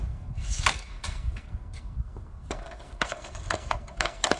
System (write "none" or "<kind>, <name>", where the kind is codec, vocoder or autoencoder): codec, SNAC